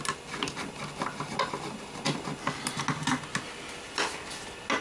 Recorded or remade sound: recorded